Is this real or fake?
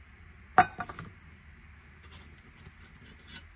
real